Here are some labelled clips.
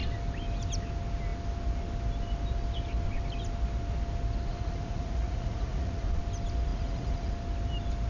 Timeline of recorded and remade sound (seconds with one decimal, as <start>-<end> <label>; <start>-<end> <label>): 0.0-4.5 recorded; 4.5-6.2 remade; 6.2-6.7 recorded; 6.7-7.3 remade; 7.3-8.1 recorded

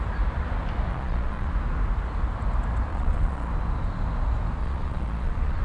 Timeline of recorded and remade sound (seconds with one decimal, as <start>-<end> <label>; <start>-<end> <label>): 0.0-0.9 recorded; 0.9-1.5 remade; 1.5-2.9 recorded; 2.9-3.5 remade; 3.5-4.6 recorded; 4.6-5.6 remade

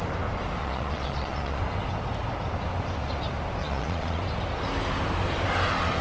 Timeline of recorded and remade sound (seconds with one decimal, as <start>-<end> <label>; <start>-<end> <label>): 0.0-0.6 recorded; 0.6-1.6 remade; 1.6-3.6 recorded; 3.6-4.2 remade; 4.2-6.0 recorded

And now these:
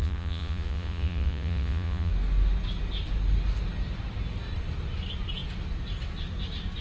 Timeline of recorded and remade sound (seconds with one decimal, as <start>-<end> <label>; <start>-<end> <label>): 0.0-2.1 remade; 2.1-6.8 recorded

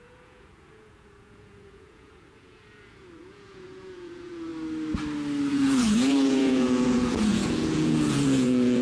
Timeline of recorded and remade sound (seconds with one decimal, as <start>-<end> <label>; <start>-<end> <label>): 0.0-4.5 remade; 4.5-5.5 recorded; 5.5-8.8 remade